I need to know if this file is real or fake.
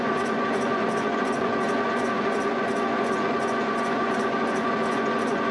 fake